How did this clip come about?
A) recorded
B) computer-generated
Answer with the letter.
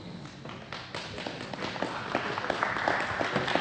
A